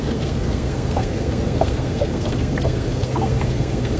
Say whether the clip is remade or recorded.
remade